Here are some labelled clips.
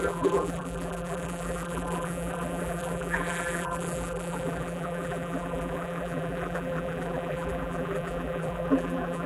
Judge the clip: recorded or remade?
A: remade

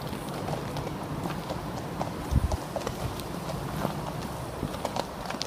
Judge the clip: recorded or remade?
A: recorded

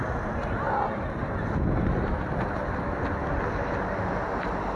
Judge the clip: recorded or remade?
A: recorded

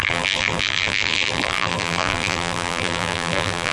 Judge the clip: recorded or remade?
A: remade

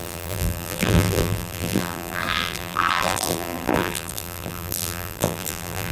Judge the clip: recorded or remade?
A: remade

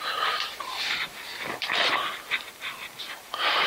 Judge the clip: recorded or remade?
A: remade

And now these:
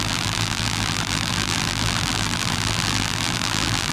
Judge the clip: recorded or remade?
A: remade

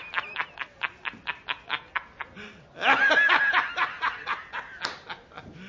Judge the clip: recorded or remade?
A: recorded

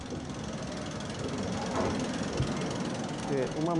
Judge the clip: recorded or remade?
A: recorded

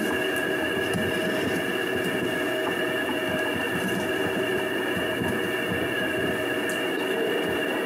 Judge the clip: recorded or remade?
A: recorded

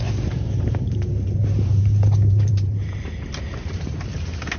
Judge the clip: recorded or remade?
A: remade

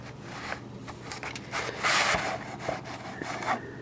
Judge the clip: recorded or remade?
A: recorded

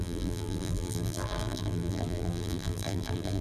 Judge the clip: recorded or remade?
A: remade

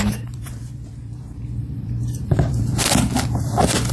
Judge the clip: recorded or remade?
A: remade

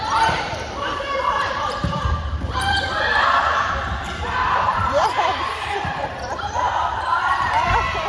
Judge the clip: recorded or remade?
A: remade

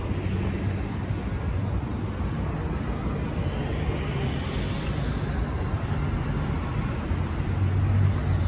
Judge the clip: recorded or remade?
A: recorded